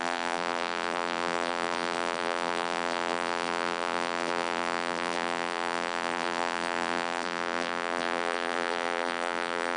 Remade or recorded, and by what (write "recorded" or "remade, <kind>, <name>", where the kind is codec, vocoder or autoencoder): remade, vocoder, BigVGAN v2